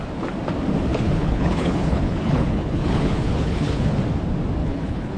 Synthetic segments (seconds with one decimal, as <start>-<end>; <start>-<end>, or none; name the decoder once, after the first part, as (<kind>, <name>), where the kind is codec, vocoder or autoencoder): 0.9-4.0 (codec, HILCodec); 4.6-5.2